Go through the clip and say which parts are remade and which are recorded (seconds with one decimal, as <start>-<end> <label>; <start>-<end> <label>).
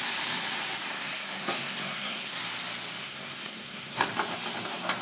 0.0-0.9 recorded; 0.9-2.4 remade; 2.4-3.0 recorded; 3.0-4.1 remade; 4.1-5.0 recorded